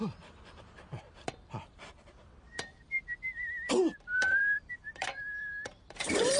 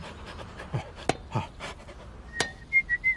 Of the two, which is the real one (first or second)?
second